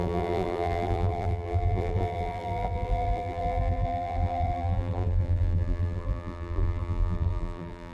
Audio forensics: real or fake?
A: fake